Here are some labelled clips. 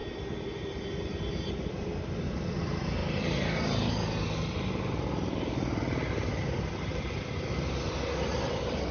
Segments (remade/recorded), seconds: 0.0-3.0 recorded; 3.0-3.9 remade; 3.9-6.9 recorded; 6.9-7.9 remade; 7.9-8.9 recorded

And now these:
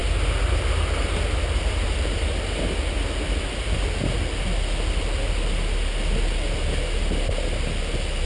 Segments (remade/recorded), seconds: 0.0-8.3 recorded

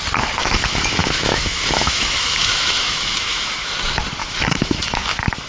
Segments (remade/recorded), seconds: 0.0-0.4 recorded; 0.4-3.7 remade; 3.7-4.2 recorded; 4.2-5.5 remade

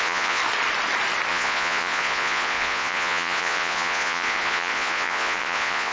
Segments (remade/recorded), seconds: 0.0-0.4 remade; 0.4-1.3 recorded; 1.3-5.9 remade

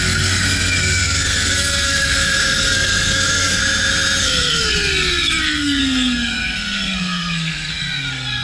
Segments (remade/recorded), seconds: 0.0-3.6 remade; 3.6-4.2 recorded; 4.2-8.4 remade

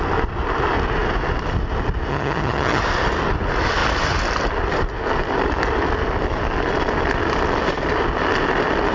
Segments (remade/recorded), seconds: 0.0-2.1 recorded; 2.1-2.8 remade; 2.8-8.9 recorded

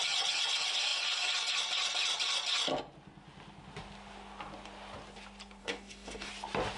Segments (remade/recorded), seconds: 0.0-5.6 recorded; 5.6-6.3 remade; 6.3-6.8 recorded